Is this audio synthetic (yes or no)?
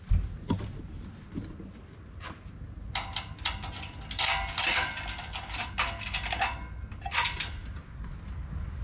no